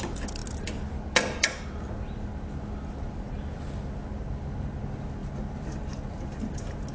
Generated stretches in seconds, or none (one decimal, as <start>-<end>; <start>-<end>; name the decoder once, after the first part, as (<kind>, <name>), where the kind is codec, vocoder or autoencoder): none